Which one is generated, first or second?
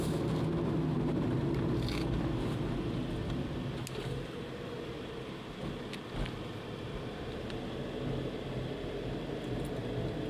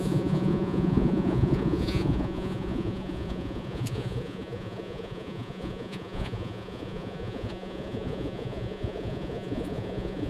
second